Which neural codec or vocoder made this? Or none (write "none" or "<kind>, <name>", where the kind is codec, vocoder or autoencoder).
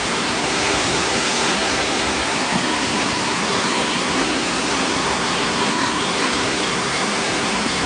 codec, SNAC